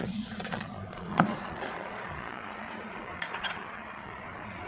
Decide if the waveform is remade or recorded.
remade